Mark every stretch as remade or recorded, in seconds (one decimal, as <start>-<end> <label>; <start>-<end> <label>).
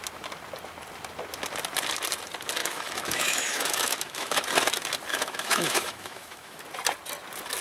0.0-2.6 recorded; 2.6-4.4 remade; 4.4-5.1 recorded; 5.1-6.6 remade; 6.6-7.6 recorded